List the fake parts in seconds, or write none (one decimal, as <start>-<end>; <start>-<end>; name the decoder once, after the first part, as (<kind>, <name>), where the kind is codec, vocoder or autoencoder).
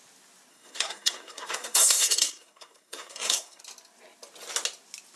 0.5-3.6 (codec, SNAC)